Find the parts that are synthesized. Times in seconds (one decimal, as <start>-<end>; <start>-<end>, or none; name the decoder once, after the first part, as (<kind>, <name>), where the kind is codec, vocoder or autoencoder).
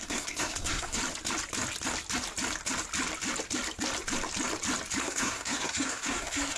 0.0-1.0 (codec, SNAC); 5.0-6.6